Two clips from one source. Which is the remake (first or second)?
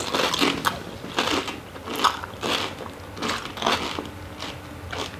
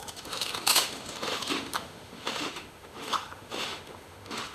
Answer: second